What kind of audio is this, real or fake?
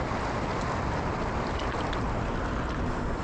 real